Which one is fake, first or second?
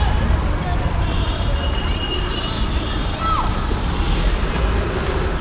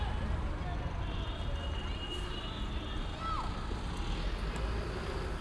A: first